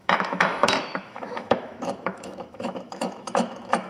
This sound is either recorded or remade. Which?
remade